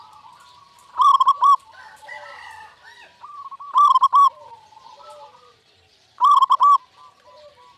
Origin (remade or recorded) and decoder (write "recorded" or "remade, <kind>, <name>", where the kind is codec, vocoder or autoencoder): remade, vocoder, BigVGAN v2